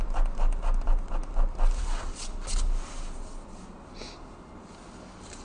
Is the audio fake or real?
real